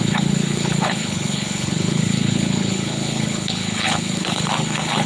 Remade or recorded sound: remade